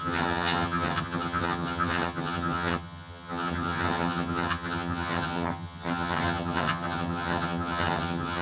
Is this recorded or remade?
remade